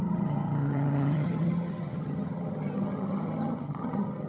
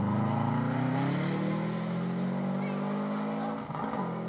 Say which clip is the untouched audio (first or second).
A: second